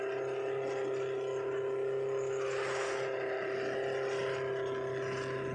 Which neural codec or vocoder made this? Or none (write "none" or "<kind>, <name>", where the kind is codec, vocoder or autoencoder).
none